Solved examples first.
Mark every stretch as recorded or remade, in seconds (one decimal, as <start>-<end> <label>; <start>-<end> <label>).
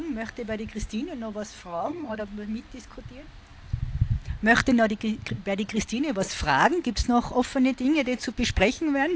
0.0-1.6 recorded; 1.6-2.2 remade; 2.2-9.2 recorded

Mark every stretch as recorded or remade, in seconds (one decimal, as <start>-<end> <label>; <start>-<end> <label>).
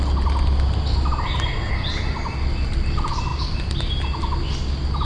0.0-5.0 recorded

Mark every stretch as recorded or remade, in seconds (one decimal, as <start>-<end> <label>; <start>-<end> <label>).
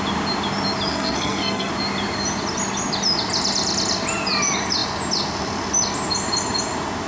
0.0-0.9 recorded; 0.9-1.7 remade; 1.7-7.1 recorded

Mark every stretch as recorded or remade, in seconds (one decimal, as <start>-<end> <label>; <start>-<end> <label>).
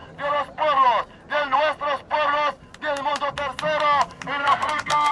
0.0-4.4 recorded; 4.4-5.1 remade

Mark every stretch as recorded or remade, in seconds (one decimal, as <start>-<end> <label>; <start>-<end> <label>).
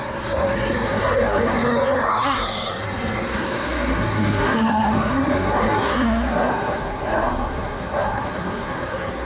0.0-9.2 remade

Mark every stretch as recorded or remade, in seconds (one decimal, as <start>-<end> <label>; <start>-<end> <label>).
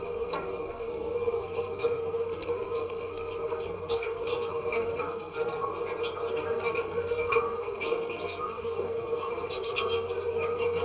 0.0-5.7 remade; 5.7-6.3 recorded; 6.3-10.8 remade